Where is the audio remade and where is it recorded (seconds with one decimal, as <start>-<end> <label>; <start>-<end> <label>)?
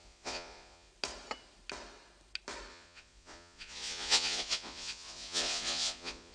0.0-0.9 remade; 0.9-2.7 recorded; 2.7-6.3 remade